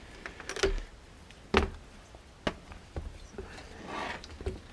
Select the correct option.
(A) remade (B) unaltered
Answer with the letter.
B